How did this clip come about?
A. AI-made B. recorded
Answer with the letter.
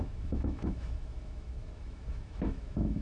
A